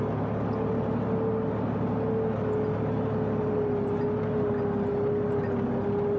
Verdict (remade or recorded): recorded